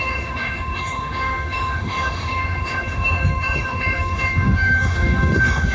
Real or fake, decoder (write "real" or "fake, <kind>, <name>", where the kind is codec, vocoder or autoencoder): fake, autoencoder, DAC-VAE